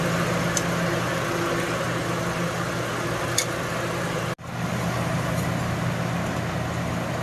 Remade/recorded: recorded